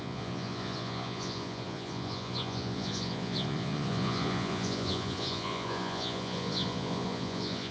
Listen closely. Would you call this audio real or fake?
fake